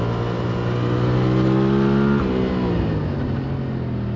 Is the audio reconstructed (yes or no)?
no